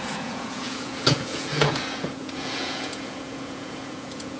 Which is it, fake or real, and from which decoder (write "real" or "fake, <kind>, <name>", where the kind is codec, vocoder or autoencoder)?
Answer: fake, vocoder, Vocos